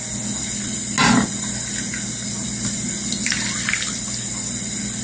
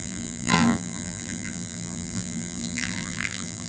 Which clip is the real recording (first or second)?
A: first